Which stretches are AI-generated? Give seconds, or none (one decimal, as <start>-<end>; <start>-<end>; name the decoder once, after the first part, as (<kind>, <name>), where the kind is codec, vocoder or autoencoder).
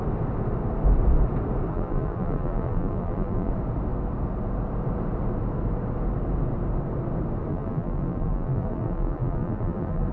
1.7-3.5 (vocoder, BigVGAN v2); 7.5-10.1